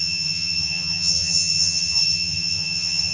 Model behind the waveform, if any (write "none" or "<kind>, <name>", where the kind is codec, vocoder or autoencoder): vocoder, HiFi-GAN